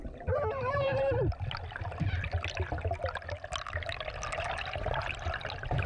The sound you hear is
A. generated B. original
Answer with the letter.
B